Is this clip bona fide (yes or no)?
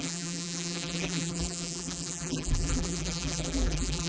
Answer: no